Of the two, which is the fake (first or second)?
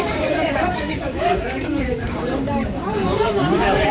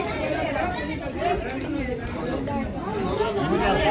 first